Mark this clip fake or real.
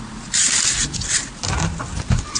real